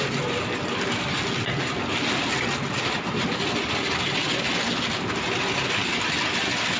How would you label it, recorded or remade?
recorded